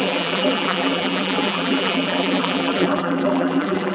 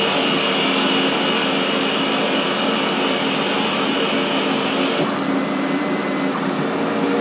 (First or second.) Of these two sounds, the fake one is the first